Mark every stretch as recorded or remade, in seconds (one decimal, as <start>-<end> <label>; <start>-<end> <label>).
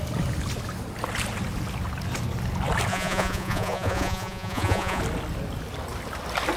0.0-2.9 recorded; 2.9-5.0 remade; 5.0-6.6 recorded